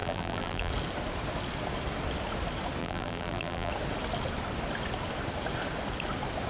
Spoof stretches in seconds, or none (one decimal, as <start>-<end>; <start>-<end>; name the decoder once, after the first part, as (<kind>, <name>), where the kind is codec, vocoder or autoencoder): 0.0-0.7 (vocoder, BigVGAN v2); 2.8-3.7